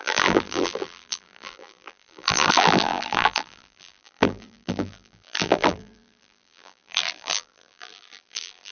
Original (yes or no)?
no